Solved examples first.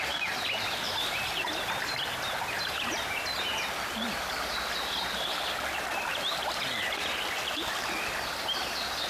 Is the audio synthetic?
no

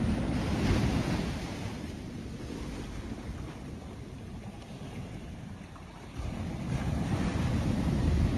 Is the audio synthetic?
no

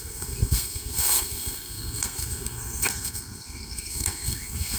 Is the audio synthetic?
yes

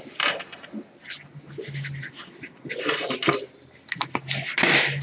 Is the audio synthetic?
no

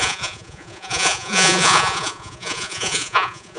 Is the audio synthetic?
yes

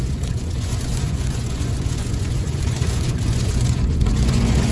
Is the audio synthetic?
yes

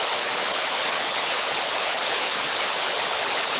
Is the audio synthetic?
yes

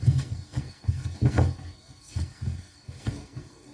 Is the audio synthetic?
yes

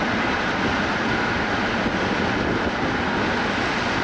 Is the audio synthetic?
no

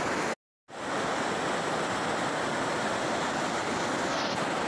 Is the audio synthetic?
no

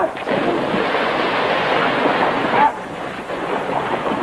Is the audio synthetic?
yes